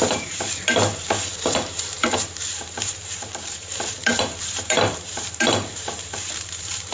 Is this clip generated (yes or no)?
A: yes